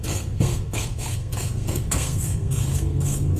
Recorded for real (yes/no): no